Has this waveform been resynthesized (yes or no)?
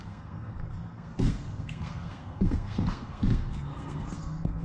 yes